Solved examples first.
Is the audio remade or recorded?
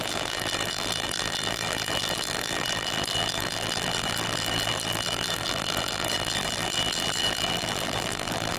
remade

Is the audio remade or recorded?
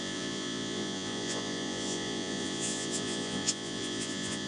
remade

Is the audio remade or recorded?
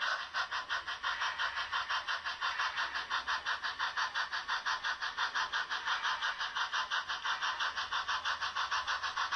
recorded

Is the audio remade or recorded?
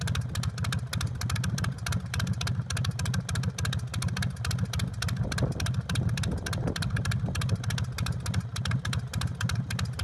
recorded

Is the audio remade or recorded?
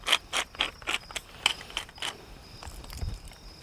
recorded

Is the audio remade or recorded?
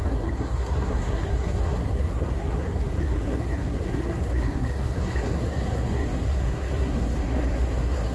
remade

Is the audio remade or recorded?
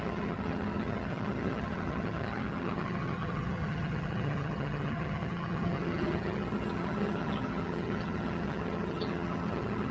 remade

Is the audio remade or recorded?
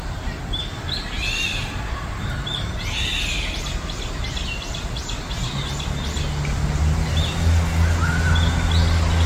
recorded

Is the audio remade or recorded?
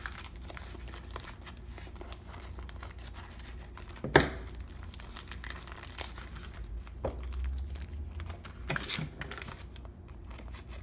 recorded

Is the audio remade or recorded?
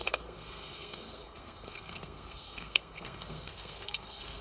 remade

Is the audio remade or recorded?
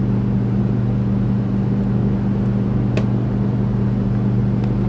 recorded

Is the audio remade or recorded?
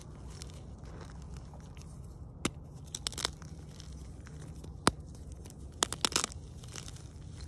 recorded